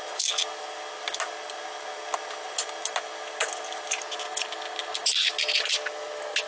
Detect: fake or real real